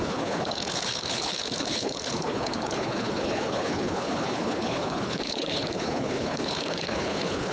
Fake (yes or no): yes